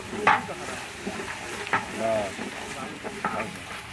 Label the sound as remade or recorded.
recorded